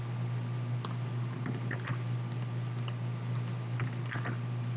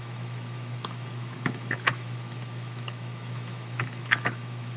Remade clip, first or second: second